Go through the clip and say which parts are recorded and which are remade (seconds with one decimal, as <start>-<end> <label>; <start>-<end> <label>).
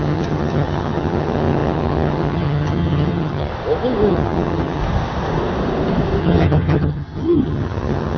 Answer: 0.0-3.5 remade; 3.5-4.1 recorded; 4.1-4.8 remade; 4.8-6.2 recorded; 6.2-8.2 remade